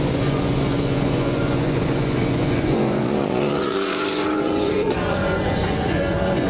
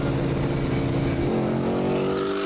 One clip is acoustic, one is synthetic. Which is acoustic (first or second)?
second